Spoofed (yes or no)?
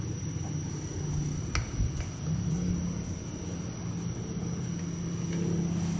no